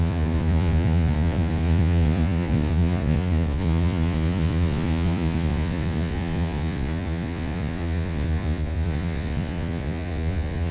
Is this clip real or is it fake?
fake